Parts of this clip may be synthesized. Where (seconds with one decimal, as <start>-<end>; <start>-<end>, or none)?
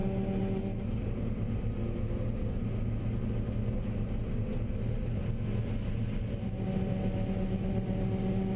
none